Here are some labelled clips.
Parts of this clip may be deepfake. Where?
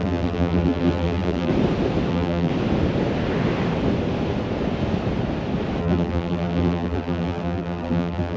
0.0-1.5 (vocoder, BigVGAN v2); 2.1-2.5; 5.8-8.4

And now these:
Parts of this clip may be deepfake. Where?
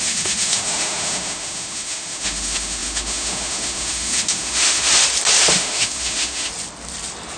0.0-4.9 (autoencoder, DAC-VAE); 5.4-6.5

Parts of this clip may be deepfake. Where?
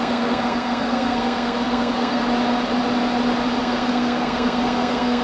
0.0-2.2 (codec, SNAC); 3.6-5.2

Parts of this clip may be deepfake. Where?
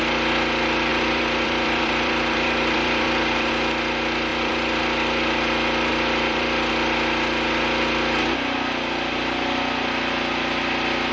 0.9-3.5 (vocoder, BigVGAN v2); 4.3-4.8; 5.9-6.7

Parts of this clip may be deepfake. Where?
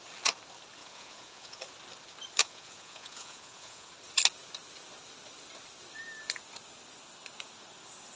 0.8-1.6 (vocoder, Vocos); 2.4-3.9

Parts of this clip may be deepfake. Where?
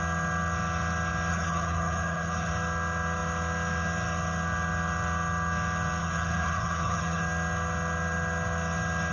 1.3-2.5 (codec, HILCodec); 6.0-7.2